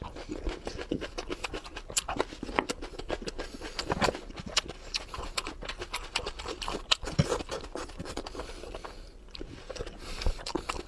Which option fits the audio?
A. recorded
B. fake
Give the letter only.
B